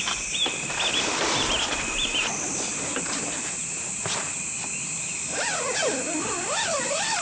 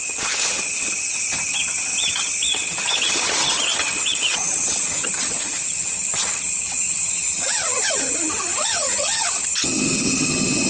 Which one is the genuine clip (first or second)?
first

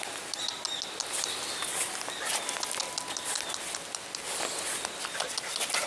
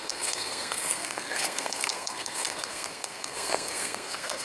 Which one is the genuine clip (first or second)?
first